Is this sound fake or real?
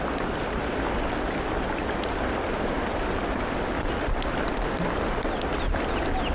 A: fake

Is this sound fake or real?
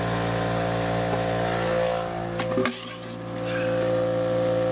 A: real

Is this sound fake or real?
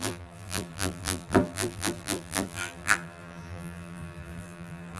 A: fake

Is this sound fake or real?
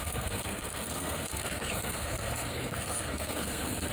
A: fake